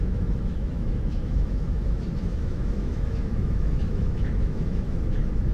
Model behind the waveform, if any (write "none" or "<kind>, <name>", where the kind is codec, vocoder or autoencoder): autoencoder, DAC-VAE